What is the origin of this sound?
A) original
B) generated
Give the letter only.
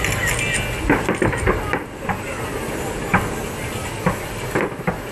A